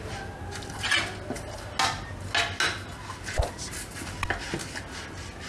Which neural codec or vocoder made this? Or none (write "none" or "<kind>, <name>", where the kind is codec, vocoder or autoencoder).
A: none